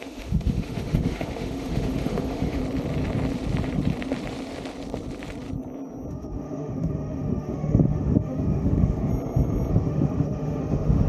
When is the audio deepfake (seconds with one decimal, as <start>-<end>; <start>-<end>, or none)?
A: 0.0-2.6; 6.1-9.1; 9.7-11.1